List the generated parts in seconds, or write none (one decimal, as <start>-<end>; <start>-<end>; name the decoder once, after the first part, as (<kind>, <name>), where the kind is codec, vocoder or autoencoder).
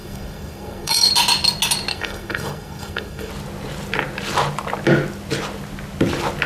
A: 0.0-1.1 (codec, SNAC); 1.9-3.3